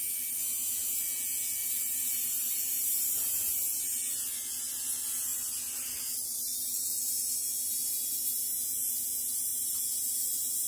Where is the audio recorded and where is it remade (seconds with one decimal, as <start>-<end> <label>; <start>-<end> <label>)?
0.0-1.6 recorded; 1.6-3.3 remade; 3.3-9.5 recorded; 9.5-10.7 remade